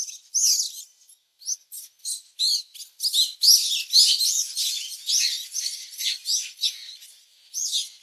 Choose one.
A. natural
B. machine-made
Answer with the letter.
A